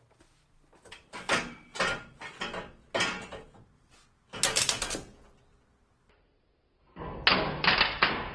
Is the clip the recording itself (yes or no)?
yes